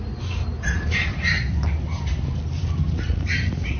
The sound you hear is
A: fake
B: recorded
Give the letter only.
B